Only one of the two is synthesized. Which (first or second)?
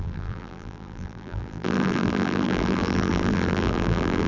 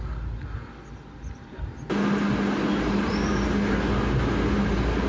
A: first